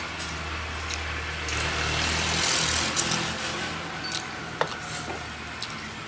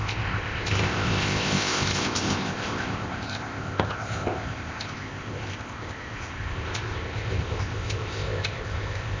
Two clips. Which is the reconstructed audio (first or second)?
second